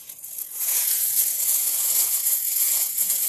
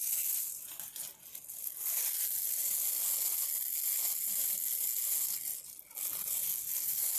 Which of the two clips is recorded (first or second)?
second